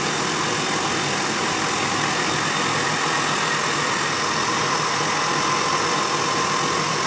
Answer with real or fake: real